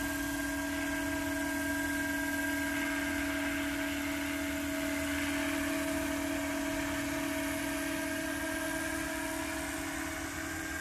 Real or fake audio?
real